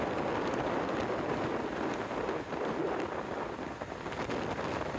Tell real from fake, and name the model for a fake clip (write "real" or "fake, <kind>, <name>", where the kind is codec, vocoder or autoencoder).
real